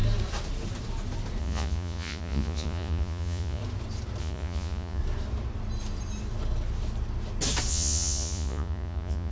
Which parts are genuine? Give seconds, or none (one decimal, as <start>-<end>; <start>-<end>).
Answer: 0.0-1.4; 3.6-4.2; 5.0-7.7